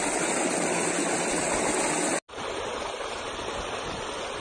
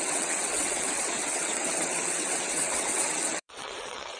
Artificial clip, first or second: second